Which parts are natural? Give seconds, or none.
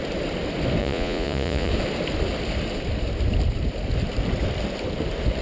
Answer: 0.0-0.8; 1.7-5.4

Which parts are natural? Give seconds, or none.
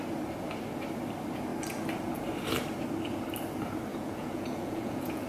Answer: 0.0-3.9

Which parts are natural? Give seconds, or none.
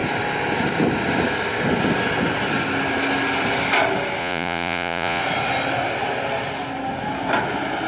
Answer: 0.0-4.2; 5.2-7.9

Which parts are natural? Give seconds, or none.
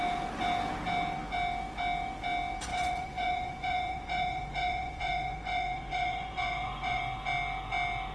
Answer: 0.0-2.7; 7.0-8.1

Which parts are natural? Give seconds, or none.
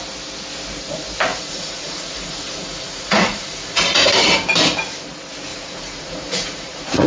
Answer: 0.0-1.3; 4.1-5.5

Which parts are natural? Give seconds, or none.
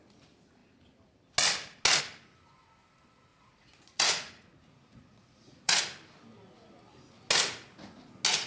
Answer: 0.0-3.3; 5.8-8.5